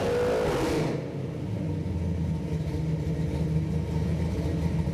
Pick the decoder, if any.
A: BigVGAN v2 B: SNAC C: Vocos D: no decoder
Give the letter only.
D